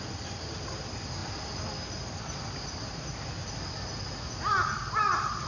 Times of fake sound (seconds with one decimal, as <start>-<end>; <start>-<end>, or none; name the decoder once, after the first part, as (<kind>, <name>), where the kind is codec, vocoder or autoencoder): none